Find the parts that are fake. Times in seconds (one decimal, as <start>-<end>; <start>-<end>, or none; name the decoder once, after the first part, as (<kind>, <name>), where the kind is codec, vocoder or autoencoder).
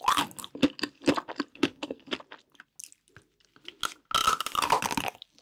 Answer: 1.5-2.1 (codec, SNAC)